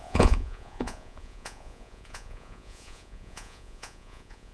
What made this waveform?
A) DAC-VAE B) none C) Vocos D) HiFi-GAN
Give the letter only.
C